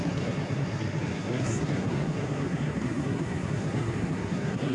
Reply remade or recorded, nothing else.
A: remade